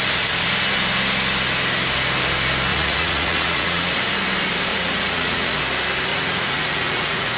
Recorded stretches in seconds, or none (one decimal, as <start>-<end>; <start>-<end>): 0.0-2.7; 3.9-4.7; 5.6-6.1